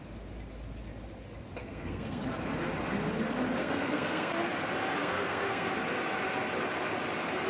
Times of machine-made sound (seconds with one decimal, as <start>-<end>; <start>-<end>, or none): 1.6-2.2; 3.6-4.3; 5.0-5.7